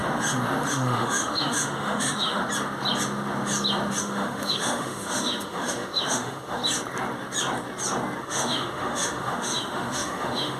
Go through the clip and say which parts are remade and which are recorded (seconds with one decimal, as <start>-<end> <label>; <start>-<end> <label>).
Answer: 0.0-0.7 recorded; 0.7-2.4 remade; 2.4-4.0 recorded; 4.0-6.6 remade; 6.6-8.2 recorded; 8.2-10.6 remade